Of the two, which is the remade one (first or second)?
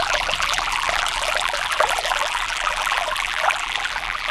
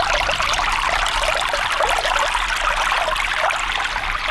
first